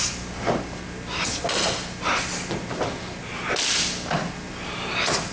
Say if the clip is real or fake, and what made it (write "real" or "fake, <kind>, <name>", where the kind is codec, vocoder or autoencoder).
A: real